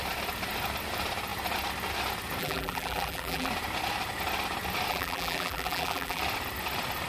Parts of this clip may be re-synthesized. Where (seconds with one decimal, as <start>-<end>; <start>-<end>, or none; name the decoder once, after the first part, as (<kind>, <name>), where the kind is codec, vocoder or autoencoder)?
2.4-3.5 (vocoder, BigVGAN v2); 4.9-6.2